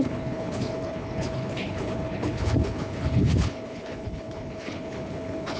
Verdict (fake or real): fake